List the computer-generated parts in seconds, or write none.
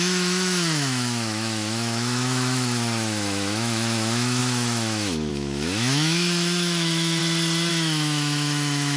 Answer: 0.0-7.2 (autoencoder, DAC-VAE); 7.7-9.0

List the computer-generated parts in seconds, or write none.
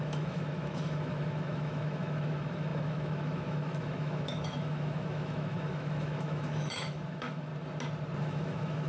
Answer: 0.0-7.5 (autoencoder, DAC-VAE); 8.2-8.9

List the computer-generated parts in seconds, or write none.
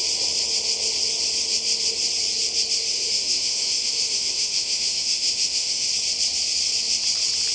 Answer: 2.9-5.9 (autoencoder, DAC-VAE)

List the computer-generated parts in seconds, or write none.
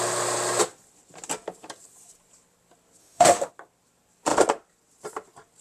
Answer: 3.0-3.5 (autoencoder, DAC-VAE)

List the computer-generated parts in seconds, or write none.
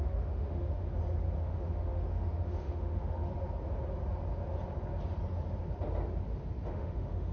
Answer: 0.0-0.8 (autoencoder, DAC-VAE); 1.4-3.3; 6.7-7.3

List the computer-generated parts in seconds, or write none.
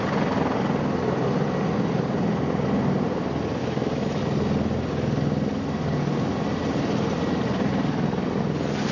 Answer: 3.6-4.2 (autoencoder, DAC-VAE)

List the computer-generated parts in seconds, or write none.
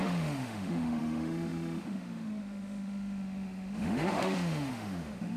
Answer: 0.0-5.4 (autoencoder, DAC-VAE)